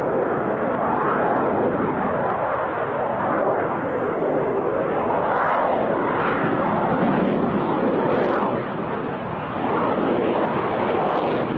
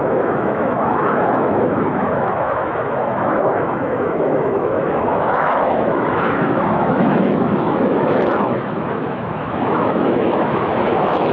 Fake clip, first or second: second